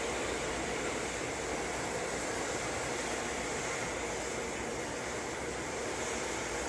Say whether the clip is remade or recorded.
recorded